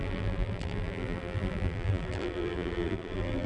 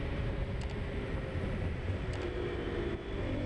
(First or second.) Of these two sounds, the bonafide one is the second